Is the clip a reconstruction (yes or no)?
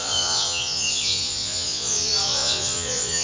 yes